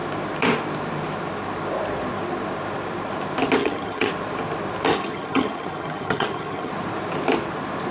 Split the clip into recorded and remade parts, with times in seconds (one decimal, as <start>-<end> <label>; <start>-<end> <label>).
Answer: 0.0-3.6 recorded; 3.6-4.1 remade; 4.1-4.9 recorded; 4.9-6.7 remade; 6.7-7.9 recorded